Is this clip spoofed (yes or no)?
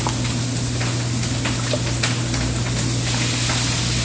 no